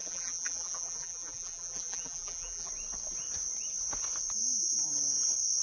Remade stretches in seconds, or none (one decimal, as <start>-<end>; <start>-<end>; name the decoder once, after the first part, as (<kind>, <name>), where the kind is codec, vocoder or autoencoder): 0.0-2.7 (vocoder, BigVGAN v2)